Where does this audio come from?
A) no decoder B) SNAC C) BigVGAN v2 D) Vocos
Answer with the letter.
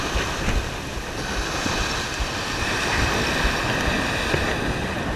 A